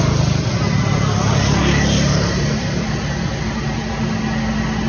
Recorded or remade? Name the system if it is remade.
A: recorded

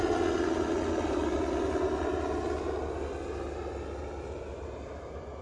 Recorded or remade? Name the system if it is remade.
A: recorded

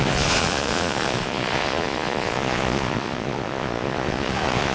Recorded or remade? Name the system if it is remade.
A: remade, vocoder, Vocos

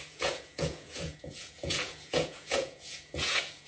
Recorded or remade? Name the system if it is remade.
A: remade, vocoder, Vocos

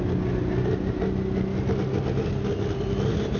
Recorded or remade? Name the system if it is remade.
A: recorded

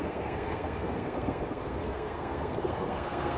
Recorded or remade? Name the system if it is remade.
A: remade, codec, SNAC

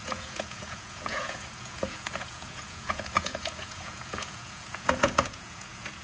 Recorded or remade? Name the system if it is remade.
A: remade, vocoder, Vocos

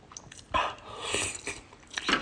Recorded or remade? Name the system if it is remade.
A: recorded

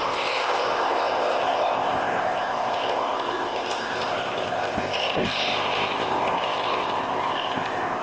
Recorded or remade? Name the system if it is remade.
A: remade, codec, ZipCodec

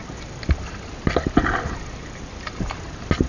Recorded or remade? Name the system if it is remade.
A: recorded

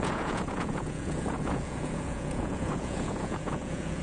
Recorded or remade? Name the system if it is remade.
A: remade, vocoder, Vocos